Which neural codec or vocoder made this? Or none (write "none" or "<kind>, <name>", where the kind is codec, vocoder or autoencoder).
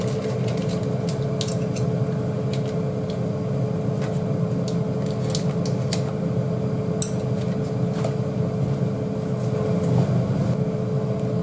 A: none